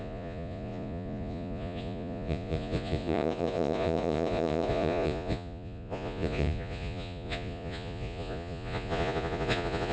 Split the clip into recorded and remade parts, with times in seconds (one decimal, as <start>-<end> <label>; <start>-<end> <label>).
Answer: 0.0-9.9 remade